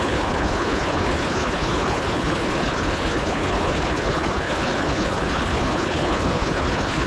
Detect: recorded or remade remade